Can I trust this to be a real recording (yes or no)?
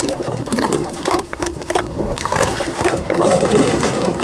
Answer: no